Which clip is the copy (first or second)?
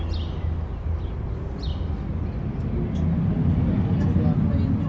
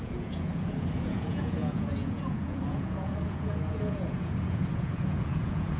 second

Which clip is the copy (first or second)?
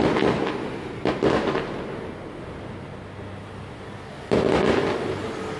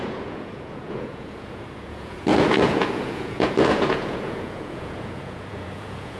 second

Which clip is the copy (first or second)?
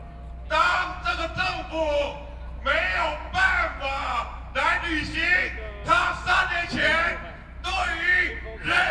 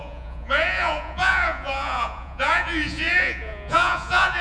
second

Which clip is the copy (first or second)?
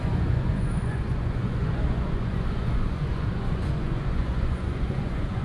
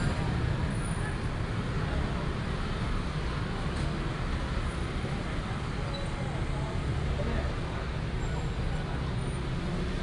first